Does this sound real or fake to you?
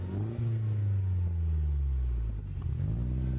real